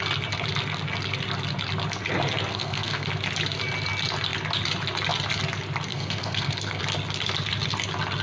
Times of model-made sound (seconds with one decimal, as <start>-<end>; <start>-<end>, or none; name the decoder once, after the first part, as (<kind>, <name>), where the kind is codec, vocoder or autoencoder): 2.5-3.1 (codec, SNAC); 5.9-6.8